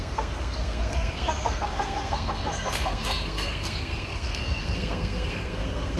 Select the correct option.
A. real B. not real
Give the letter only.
B